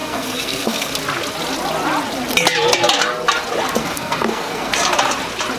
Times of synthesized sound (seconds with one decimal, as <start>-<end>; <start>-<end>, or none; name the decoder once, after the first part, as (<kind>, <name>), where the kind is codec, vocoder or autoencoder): 0.0-0.9 (codec, SNAC); 3.8-4.7